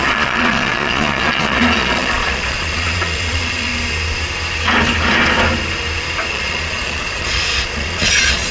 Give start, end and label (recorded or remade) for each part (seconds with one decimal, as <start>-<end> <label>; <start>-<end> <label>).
0.0-3.7 remade; 3.7-6.3 recorded; 6.3-8.5 remade

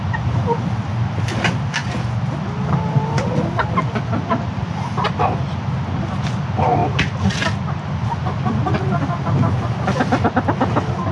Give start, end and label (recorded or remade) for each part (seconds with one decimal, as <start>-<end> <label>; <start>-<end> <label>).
0.0-11.1 recorded

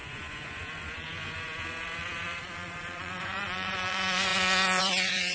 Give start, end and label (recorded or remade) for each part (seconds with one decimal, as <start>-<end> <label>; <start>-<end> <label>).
0.0-5.3 remade

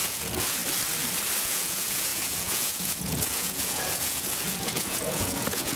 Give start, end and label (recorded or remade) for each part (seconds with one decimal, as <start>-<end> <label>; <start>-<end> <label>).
0.0-0.6 remade; 0.6-1.4 recorded; 1.4-5.8 remade